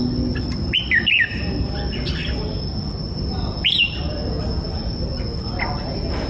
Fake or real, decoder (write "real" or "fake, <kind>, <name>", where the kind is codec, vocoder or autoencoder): real